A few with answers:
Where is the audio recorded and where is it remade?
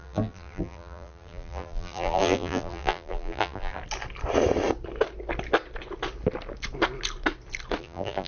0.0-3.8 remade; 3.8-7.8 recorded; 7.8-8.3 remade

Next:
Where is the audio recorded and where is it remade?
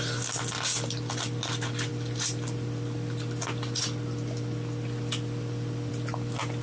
0.0-6.6 recorded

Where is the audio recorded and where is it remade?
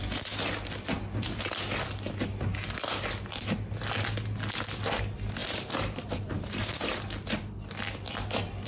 0.0-5.4 recorded; 5.4-6.9 remade; 6.9-8.7 recorded